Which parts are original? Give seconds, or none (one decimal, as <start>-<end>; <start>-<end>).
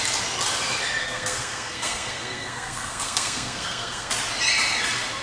0.0-1.0; 4.1-5.2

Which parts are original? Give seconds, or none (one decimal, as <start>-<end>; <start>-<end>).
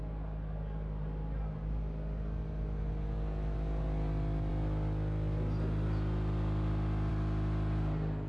0.0-8.3